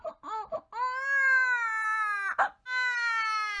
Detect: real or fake real